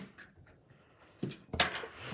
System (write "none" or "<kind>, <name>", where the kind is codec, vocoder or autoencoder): none